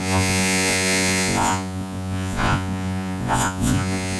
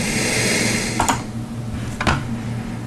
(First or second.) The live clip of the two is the second